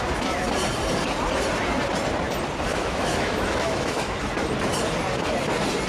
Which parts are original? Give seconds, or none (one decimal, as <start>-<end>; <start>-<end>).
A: 0.0-2.7; 4.2-5.9